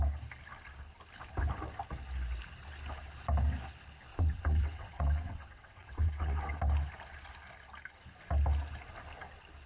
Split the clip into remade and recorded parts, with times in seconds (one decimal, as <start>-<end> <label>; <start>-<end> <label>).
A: 0.0-4.1 recorded; 4.1-6.6 remade; 6.6-9.7 recorded